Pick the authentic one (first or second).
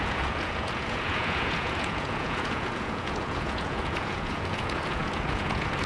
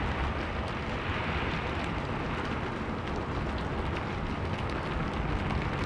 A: second